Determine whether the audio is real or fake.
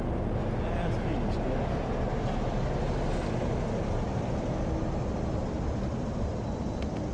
real